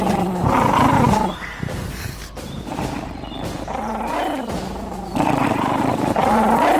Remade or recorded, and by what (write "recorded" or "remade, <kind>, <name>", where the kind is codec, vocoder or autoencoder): recorded